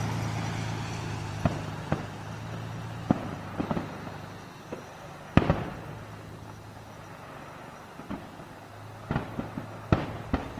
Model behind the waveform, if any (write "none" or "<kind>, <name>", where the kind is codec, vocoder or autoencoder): none